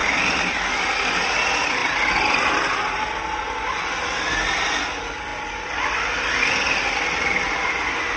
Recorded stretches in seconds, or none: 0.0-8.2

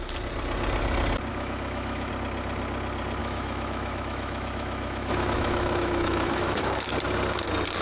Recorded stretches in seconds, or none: 0.0-1.3; 2.1-3.2; 6.9-7.8